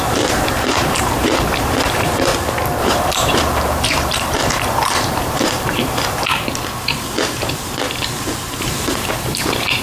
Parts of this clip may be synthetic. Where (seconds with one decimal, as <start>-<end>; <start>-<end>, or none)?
0.0-2.3; 2.8-6.3; 8.6-9.8